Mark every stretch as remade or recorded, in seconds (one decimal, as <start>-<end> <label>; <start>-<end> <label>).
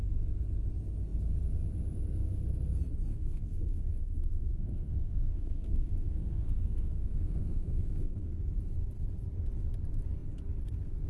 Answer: 0.0-3.1 recorded; 3.1-8.3 remade; 8.3-11.1 recorded